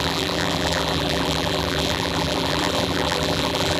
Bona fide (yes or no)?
no